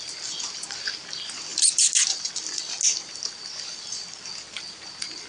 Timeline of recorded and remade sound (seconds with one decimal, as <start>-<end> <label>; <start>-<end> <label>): 0.0-5.3 recorded